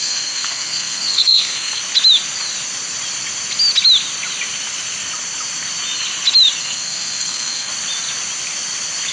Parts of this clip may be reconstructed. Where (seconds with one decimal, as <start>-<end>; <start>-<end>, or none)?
0.0-1.8; 6.6-7.7